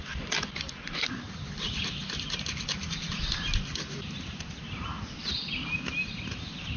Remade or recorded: recorded